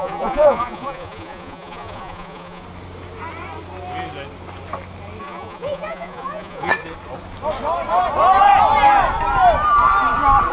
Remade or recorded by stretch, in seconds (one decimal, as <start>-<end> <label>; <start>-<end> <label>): 0.0-2.6 remade; 2.6-5.2 recorded; 5.2-6.7 remade; 6.7-10.5 recorded

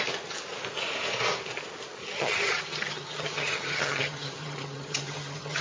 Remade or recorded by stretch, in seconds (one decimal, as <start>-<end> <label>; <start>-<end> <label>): 0.0-2.0 recorded; 2.0-5.6 remade

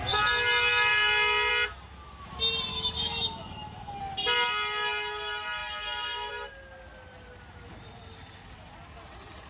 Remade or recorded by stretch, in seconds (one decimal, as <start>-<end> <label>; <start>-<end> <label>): 0.0-2.7 recorded; 2.7-4.0 remade; 4.0-9.5 recorded

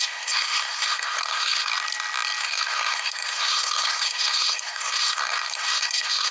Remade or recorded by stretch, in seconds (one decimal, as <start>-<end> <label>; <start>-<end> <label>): 0.0-1.7 remade; 1.7-2.4 recorded; 2.4-6.3 remade

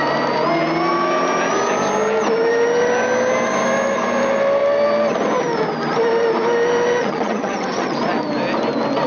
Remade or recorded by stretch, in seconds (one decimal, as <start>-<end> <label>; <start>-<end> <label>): 0.0-7.0 recorded; 7.0-8.0 remade; 8.0-9.1 recorded